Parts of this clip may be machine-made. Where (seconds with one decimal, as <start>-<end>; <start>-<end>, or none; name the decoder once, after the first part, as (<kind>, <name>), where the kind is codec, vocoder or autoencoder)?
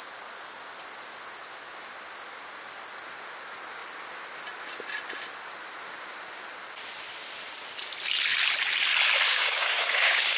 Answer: 9.3-10.4 (codec, DAC)